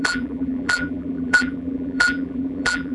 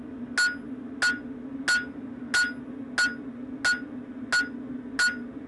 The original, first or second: second